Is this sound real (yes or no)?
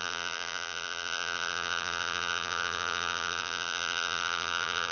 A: no